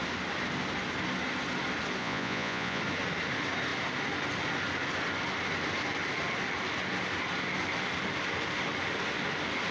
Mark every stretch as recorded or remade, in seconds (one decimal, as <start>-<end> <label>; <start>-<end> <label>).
0.0-2.0 recorded; 2.0-2.8 remade; 2.8-9.7 recorded